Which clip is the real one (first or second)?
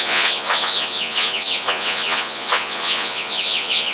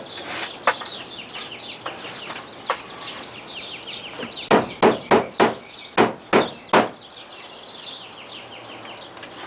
second